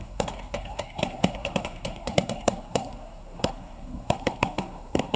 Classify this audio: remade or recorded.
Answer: remade